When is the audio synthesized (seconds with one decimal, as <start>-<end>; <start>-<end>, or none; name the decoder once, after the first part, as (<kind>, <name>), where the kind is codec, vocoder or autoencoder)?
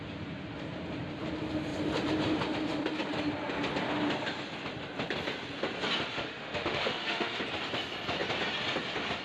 6.1-7.4 (autoencoder, DAC-VAE)